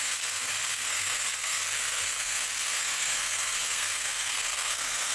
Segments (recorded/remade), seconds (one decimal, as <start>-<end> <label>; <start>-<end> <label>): 0.0-5.1 remade